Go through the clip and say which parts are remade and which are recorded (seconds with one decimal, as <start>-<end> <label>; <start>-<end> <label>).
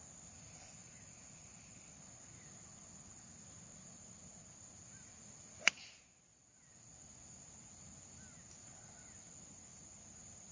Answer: 0.0-10.5 recorded